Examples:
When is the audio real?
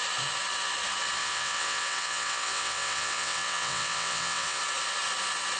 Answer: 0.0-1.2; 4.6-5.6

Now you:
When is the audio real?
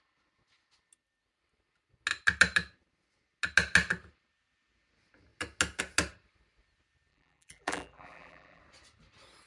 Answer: 0.0-7.1; 8.6-9.5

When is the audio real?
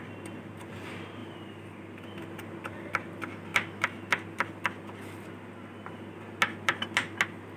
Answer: 0.0-7.6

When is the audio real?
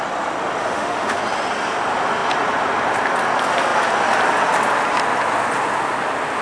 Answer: 0.0-0.6; 1.2-6.4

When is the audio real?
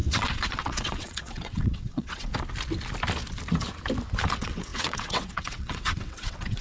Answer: 2.3-4.3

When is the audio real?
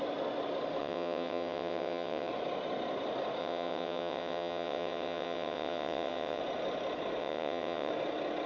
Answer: 0.0-0.8; 2.3-3.4; 6.4-7.2; 7.9-8.5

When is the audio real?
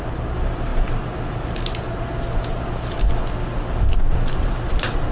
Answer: 0.0-5.1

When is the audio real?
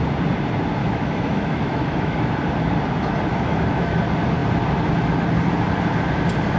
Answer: 0.0-0.8; 2.2-3.3; 4.0-6.6